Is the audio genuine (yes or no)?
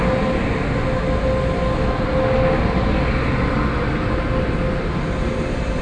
yes